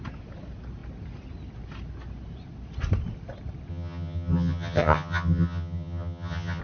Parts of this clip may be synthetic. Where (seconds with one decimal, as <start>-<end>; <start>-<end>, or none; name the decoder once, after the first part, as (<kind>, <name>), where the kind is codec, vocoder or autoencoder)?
3.7-6.6 (vocoder, HiFi-GAN)